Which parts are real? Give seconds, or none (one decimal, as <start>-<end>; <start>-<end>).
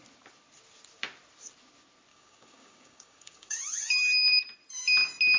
0.0-2.1; 3.6-5.4